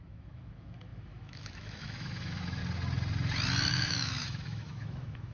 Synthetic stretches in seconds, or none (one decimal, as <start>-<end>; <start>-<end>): 0.0-2.6; 3.7-5.3

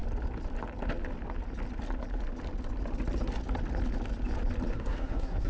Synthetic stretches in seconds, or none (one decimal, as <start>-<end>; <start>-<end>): 4.7-5.5

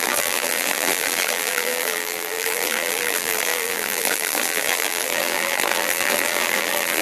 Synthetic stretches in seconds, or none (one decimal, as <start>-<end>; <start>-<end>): 0.0-7.0

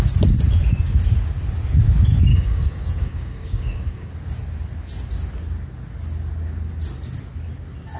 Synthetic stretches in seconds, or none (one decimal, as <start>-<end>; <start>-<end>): 2.3-4.1

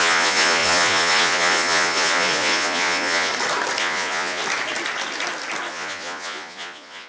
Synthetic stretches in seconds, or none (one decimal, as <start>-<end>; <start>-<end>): 0.0-3.3; 3.8-4.4; 5.7-7.1

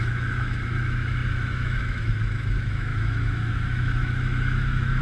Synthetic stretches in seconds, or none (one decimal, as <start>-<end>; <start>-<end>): 0.0-5.0

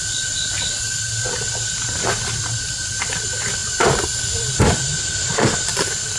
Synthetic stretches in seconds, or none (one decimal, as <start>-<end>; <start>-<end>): none

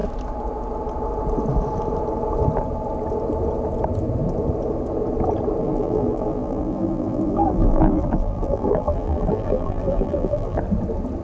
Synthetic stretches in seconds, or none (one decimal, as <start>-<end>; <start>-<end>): 5.6-10.6